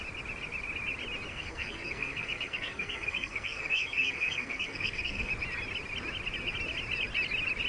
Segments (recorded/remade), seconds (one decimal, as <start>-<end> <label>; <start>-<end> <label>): 0.0-1.3 recorded; 1.3-5.3 remade; 5.3-7.7 recorded